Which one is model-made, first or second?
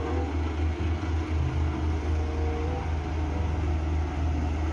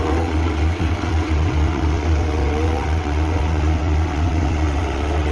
second